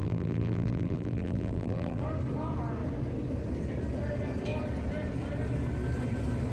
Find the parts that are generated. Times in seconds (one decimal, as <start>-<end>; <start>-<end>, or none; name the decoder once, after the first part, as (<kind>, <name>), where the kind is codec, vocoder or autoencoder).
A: 0.0-2.0 (vocoder, BigVGAN v2)